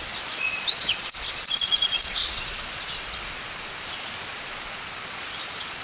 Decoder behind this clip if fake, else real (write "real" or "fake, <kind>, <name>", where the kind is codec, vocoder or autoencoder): fake, vocoder, Vocos